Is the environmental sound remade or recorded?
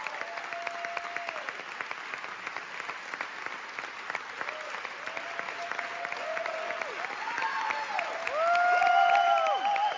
recorded